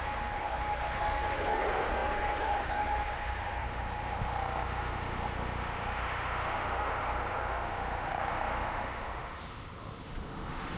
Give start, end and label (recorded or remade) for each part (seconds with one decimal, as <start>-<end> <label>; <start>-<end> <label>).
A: 0.0-10.8 remade